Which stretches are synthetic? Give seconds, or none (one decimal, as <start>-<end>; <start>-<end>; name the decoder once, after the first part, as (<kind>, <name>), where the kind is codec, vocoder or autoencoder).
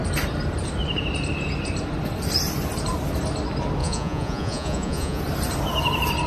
3.8-5.2 (vocoder, Vocos)